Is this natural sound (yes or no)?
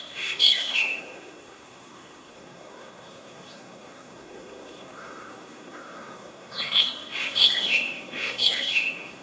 no